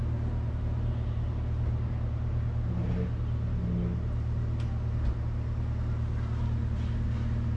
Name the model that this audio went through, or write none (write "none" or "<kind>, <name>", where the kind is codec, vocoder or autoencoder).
none